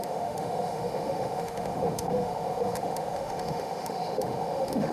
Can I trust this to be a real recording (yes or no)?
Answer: no